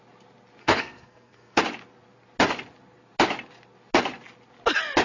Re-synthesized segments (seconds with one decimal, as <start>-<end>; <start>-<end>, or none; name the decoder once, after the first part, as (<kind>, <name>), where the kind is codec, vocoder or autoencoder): 0.6-1.6 (codec, SNAC)